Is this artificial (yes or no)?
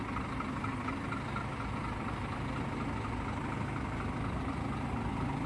no